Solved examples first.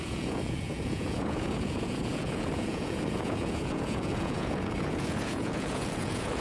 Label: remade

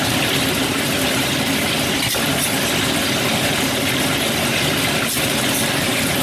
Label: recorded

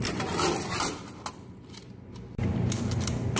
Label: recorded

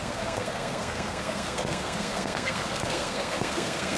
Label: remade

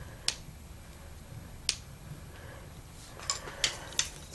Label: recorded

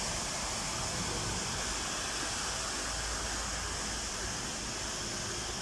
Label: recorded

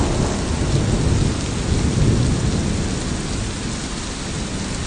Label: recorded